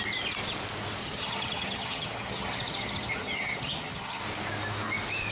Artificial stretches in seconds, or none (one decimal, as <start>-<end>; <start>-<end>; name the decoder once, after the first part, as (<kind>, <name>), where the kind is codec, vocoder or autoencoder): 1.0-4.2 (vocoder, HiFi-GAN)